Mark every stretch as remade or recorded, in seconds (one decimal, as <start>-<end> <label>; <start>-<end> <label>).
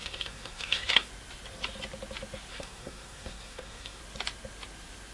0.0-1.1 remade; 1.1-2.5 recorded; 2.5-4.0 remade; 4.0-5.1 recorded